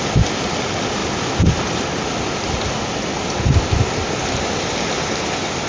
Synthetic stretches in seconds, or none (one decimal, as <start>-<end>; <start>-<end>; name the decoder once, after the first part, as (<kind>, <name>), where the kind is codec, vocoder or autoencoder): none